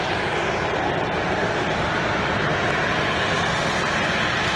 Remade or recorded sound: recorded